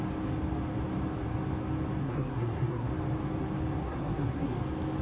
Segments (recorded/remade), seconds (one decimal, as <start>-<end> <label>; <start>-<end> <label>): 0.0-2.0 recorded; 2.0-2.9 remade; 2.9-3.8 recorded; 3.8-4.6 remade; 4.6-5.0 recorded